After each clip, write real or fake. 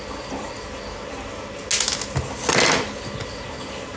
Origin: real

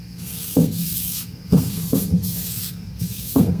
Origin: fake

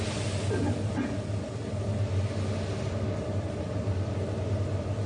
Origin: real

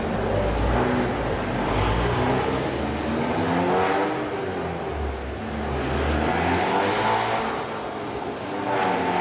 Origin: real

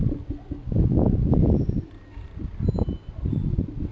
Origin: real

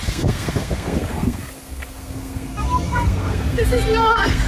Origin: fake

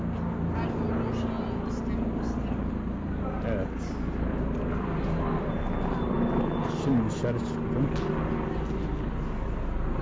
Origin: real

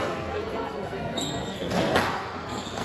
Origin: fake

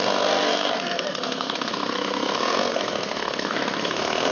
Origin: fake